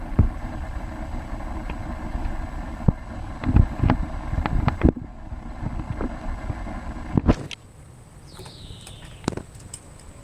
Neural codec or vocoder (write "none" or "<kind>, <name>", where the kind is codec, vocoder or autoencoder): none